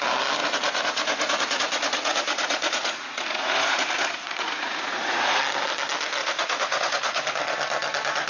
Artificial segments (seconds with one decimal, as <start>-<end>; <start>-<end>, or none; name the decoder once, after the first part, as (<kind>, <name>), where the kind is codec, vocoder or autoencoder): 0.4-5.4 (vocoder, Vocos); 6.2-7.3